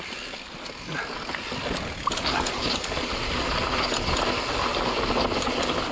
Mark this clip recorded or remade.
recorded